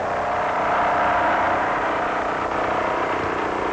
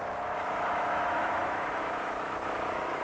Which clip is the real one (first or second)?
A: first